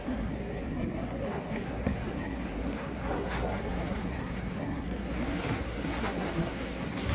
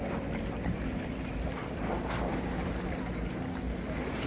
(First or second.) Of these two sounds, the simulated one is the first